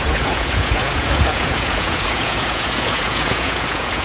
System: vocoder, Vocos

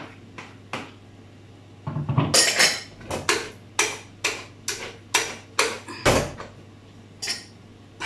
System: none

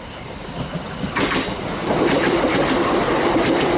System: none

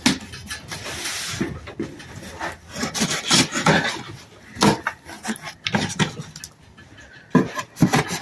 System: none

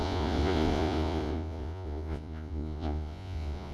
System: vocoder, Vocos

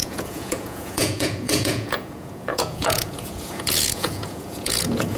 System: vocoder, Vocos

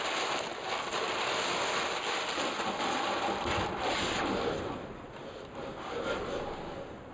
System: none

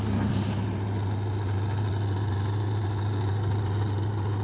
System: none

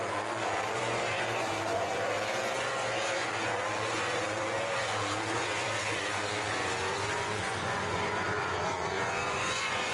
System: vocoder, Vocos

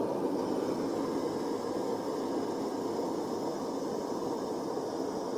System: none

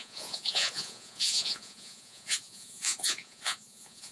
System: vocoder, Vocos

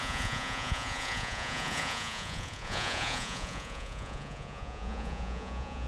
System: vocoder, Vocos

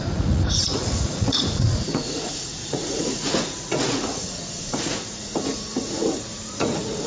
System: vocoder, Vocos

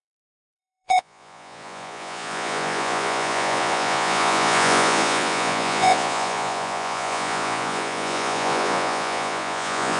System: vocoder, Vocos